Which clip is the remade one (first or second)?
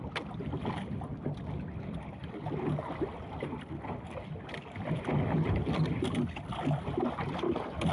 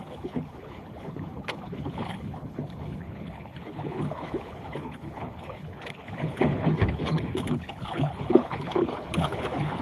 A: second